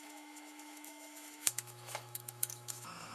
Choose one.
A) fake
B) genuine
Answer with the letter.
A